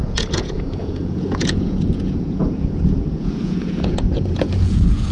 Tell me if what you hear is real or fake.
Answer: fake